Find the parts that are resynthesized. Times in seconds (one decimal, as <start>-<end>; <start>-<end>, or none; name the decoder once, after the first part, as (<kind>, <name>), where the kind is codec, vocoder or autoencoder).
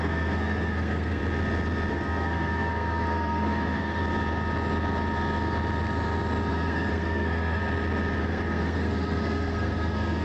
0.0-1.2 (codec, SNAC); 1.9-4.0; 6.5-7.6; 8.2-10.2